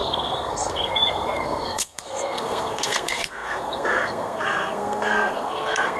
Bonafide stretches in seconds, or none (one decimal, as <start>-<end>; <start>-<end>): none